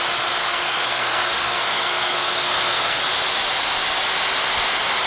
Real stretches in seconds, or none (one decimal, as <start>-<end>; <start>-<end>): 0.0-0.4; 3.0-5.1